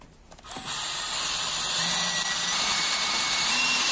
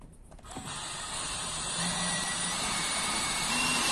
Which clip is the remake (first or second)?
second